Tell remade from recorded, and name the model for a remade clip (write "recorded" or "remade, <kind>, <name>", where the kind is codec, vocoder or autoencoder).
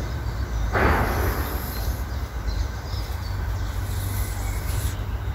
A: recorded